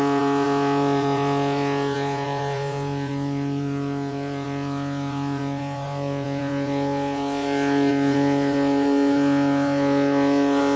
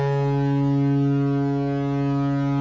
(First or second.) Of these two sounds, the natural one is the second